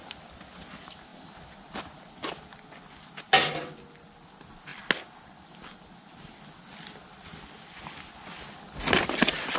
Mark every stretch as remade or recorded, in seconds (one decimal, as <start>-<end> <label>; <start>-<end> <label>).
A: 0.0-9.6 recorded